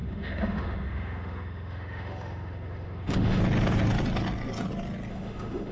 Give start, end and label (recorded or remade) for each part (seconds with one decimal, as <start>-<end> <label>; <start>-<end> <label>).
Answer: 0.0-3.4 remade; 3.4-5.1 recorded; 5.1-5.7 remade